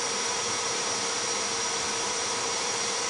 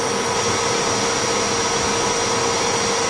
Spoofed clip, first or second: first